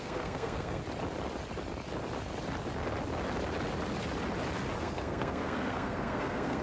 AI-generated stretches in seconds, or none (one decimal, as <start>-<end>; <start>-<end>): 0.0-0.8; 4.8-6.6